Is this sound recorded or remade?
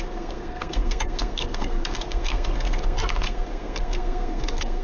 remade